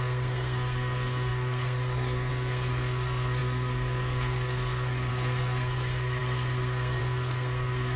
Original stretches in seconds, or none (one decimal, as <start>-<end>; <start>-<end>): none

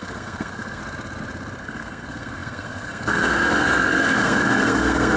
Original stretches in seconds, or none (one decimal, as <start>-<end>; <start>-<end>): 0.8-1.6

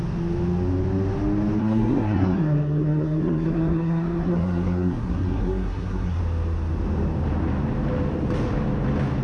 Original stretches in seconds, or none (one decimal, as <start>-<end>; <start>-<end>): 0.0-1.6; 6.2-9.2

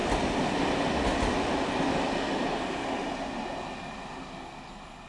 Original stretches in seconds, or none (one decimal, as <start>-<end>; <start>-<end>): 0.0-5.1

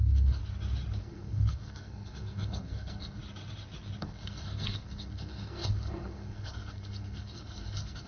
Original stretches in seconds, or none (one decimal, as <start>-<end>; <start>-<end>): 0.4-1.0; 3.2-4.0

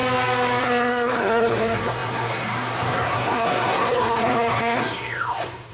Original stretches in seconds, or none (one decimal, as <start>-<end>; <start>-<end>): 0.0-0.6

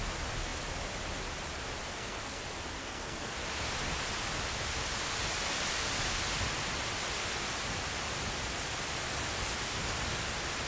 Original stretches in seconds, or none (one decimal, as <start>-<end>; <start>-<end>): 0.0-1.9; 2.4-2.8; 3.3-10.7

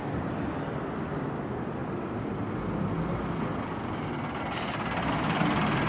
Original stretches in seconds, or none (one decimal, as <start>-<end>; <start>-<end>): 0.0-5.9